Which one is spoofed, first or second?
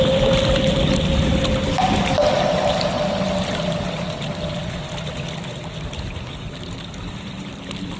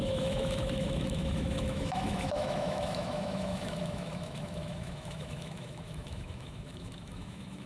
second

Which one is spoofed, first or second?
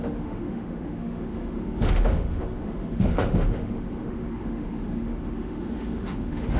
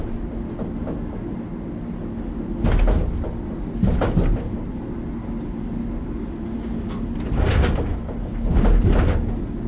first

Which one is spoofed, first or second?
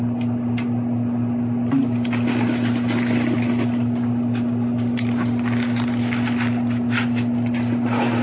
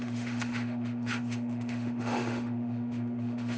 second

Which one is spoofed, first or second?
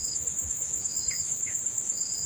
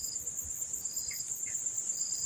first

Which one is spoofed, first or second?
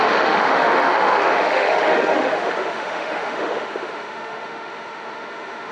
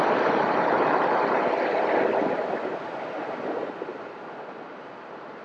first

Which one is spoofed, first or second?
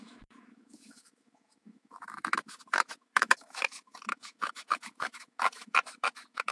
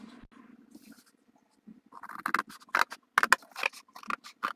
first